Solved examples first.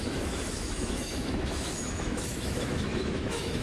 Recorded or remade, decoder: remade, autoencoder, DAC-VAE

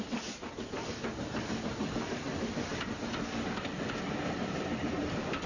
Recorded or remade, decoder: recorded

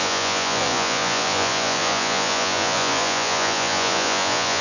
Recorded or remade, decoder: remade, vocoder, Vocos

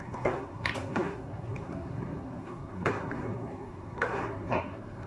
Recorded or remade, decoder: remade, codec, SNAC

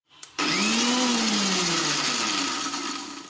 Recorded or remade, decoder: recorded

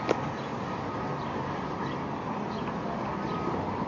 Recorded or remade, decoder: recorded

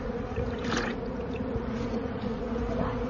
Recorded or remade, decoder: remade, vocoder, Vocos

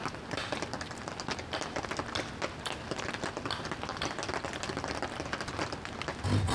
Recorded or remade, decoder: recorded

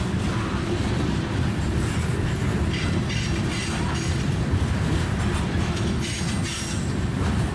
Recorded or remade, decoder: recorded